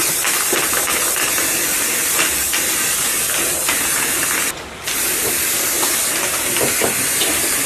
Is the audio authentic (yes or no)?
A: no